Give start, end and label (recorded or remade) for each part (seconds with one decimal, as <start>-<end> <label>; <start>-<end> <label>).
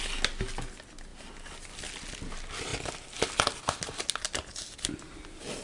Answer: 0.0-5.6 recorded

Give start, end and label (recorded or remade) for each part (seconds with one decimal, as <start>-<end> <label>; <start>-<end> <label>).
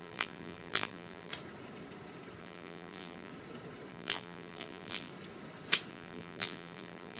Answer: 0.0-1.3 remade; 1.3-2.4 recorded; 2.4-3.3 remade; 3.3-3.9 recorded; 3.9-5.1 remade; 5.1-5.9 recorded; 5.9-7.2 remade